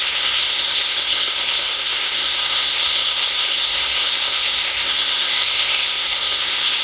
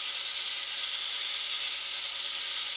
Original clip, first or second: second